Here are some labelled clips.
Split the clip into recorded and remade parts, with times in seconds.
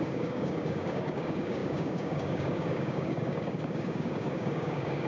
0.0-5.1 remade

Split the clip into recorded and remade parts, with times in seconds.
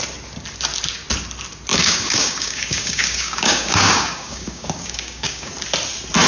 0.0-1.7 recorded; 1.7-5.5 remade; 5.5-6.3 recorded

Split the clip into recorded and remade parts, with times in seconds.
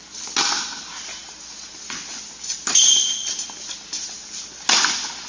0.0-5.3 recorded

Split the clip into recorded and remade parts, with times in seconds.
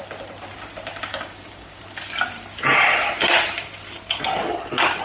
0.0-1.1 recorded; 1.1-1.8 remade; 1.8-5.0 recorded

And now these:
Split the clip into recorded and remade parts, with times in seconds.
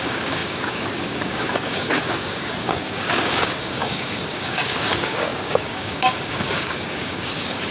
0.0-7.7 remade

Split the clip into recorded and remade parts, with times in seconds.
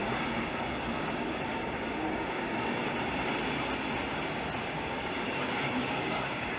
0.0-2.8 remade; 2.8-4.6 recorded; 4.6-6.6 remade